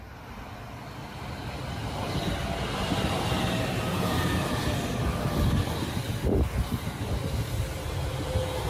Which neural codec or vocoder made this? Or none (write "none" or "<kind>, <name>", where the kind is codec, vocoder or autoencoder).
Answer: none